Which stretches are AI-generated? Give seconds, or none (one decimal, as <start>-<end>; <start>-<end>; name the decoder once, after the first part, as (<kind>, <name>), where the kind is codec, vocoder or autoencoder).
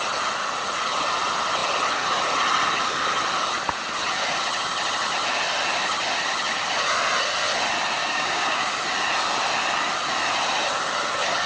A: 8.0-8.7 (codec, DAC)